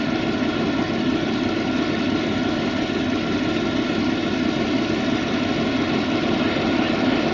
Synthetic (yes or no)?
yes